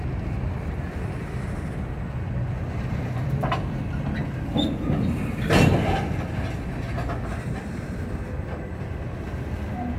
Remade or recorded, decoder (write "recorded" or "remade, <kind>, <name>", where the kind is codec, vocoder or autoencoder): recorded